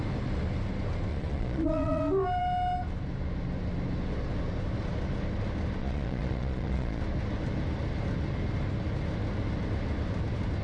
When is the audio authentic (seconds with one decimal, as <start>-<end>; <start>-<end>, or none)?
0.0-1.1; 2.0-5.8; 7.0-10.6